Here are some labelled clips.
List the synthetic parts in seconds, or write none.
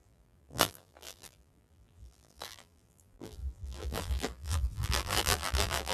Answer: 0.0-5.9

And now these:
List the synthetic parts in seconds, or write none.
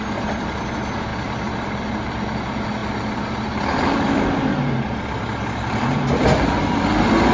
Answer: 1.1-1.7; 2.8-7.3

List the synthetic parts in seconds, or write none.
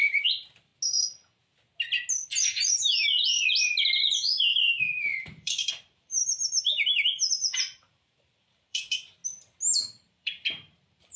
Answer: 0.0-0.7; 4.0-6.2; 7.3-9.2; 10.1-11.2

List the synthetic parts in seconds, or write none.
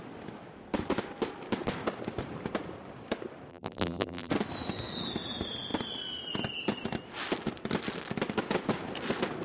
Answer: 3.5-4.3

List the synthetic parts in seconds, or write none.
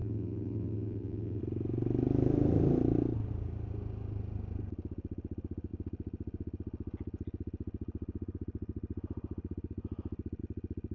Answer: 0.0-1.4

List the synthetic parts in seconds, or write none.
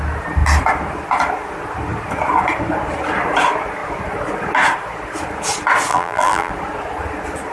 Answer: 5.9-6.5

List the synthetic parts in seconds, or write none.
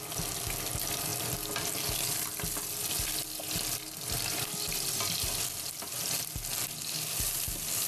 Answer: none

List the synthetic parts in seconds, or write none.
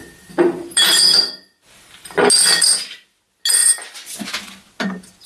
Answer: 0.0-3.2; 3.6-4.3